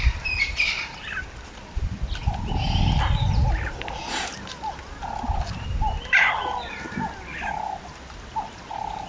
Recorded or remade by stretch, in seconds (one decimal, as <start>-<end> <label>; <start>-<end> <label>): 0.0-9.1 recorded